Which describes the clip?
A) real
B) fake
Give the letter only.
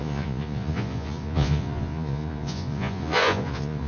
B